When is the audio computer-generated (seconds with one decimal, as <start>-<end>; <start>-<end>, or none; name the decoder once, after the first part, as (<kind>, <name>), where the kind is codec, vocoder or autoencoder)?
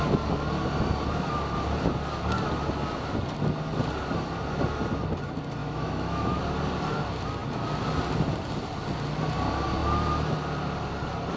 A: 5.6-6.4 (autoencoder, DAC-VAE)